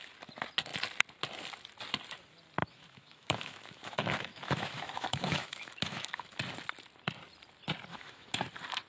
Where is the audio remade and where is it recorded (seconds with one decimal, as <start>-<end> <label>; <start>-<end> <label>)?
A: 0.0-2.6 recorded; 2.6-6.4 remade; 6.4-7.9 recorded; 7.9-8.4 remade; 8.4-8.9 recorded